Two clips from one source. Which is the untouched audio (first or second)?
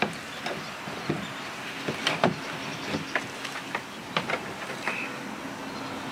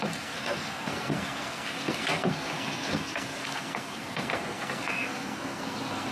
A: first